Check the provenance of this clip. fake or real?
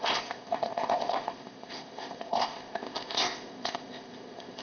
fake